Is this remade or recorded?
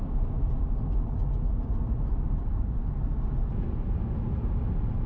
recorded